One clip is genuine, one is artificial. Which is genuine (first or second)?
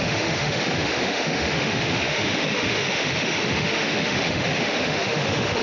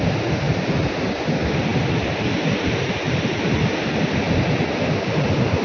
second